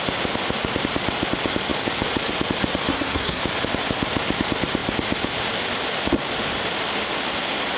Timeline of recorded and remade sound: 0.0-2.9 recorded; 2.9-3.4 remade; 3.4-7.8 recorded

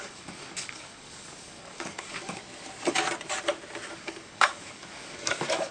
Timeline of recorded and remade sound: 0.0-2.4 remade; 2.4-3.9 recorded; 3.9-5.7 remade

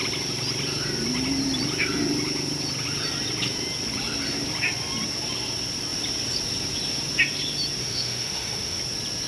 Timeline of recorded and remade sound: 0.0-7.8 recorded; 7.8-8.8 remade; 8.8-9.3 recorded

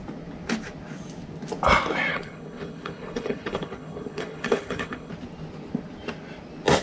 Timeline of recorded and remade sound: 0.0-2.1 recorded; 2.1-5.1 remade; 5.1-6.8 recorded

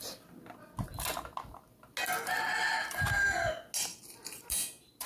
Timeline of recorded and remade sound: 0.0-5.1 recorded